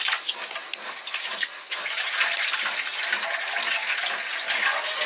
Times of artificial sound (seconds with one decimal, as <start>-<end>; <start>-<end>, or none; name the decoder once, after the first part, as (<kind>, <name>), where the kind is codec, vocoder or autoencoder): none